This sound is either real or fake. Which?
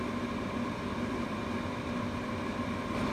real